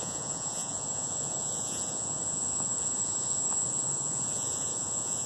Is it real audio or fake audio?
fake